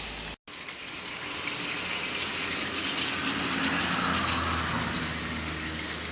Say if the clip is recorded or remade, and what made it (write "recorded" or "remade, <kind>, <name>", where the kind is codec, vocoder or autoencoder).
recorded